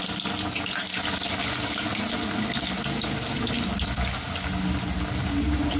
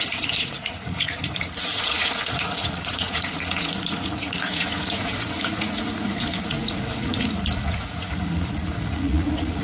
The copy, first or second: second